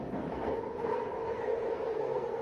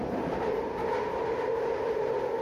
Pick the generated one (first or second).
first